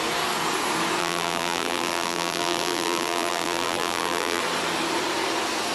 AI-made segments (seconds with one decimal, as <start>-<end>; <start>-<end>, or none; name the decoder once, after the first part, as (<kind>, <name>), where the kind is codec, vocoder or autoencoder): 1.0-4.4 (vocoder, BigVGAN v2)